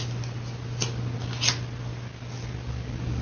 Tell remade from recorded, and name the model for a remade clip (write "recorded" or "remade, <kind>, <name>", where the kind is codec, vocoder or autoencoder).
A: recorded